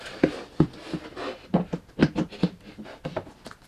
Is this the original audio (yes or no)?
yes